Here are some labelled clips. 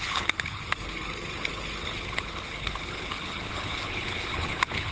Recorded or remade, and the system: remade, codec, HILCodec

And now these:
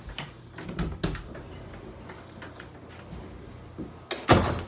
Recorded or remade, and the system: recorded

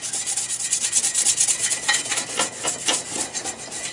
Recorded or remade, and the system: recorded